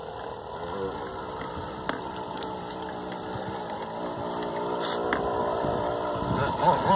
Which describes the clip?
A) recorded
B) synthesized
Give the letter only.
A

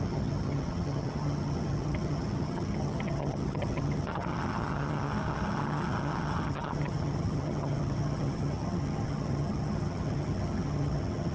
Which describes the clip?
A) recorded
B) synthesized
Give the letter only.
B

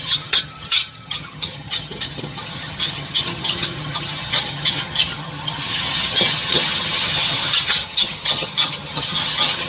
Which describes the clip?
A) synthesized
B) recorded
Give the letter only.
A